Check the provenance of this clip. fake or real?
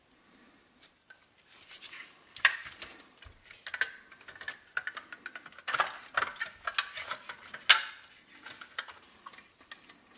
real